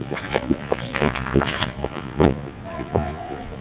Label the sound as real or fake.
fake